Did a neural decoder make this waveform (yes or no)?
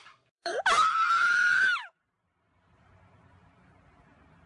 yes